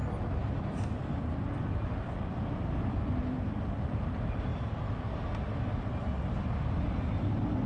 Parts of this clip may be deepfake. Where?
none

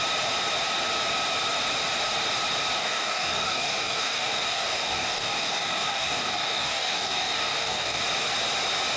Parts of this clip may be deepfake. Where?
2.8-8.0 (codec, DAC)

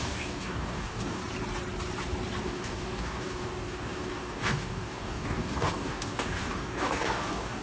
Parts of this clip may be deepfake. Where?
0.0-1.2 (codec, DAC); 2.4-7.6